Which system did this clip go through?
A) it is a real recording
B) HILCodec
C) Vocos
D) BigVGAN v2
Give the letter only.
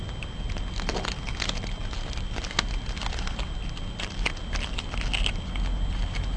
A